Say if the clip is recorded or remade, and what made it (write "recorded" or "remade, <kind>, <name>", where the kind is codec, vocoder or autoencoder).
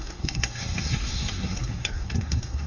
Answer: remade, codec, SNAC